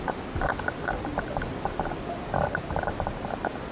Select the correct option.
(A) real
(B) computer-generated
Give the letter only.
A